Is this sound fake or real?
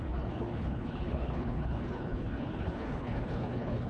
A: fake